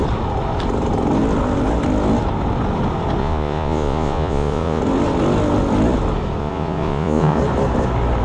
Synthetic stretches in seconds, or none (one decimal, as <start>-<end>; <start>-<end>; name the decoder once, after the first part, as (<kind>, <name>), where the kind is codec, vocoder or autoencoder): 3.2-4.8 (vocoder, Vocos); 6.4-7.4